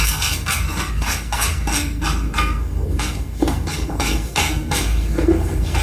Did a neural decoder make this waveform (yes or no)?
yes